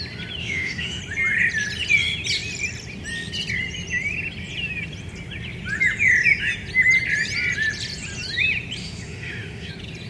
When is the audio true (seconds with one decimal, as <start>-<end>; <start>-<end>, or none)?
0.0-0.4; 1.0-8.8; 9.7-10.1